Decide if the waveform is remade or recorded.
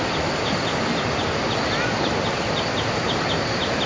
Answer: recorded